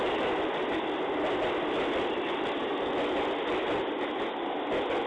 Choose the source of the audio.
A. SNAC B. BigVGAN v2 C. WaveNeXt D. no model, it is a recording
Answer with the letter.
D